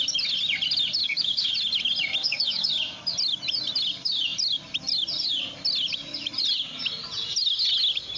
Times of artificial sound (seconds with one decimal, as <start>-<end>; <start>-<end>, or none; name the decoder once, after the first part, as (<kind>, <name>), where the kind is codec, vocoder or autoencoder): 1.0-1.5 (codec, DAC); 2.2-2.7